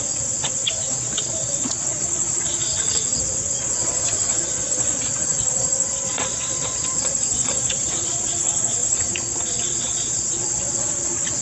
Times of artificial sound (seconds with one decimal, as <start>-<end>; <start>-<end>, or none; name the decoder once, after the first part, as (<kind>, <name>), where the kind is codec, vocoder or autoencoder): 0.0-11.4 (vocoder, Vocos)